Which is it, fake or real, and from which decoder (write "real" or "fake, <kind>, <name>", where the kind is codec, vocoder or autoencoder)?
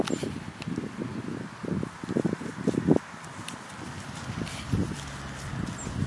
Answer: real